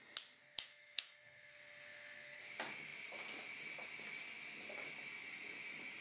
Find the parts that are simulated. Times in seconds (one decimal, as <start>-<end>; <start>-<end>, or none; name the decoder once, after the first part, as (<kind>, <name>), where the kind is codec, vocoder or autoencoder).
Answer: 0.4-2.4 (codec, SNAC)